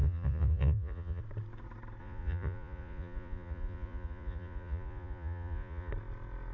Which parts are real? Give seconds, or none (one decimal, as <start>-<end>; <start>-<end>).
1.2-2.0; 5.9-6.5